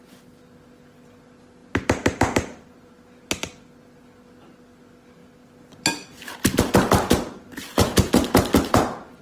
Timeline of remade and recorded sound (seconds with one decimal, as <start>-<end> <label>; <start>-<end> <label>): 0.0-9.2 recorded